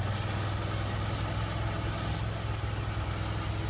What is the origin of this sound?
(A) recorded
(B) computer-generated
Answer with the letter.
A